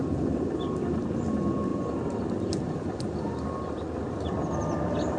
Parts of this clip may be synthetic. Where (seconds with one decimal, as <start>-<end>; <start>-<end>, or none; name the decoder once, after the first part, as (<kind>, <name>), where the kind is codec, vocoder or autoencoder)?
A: none